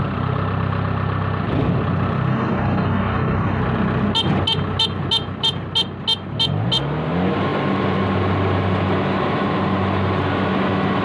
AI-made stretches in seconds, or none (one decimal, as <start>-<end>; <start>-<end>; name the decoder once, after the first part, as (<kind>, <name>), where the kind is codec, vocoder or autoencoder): 2.3-3.6 (codec, DAC)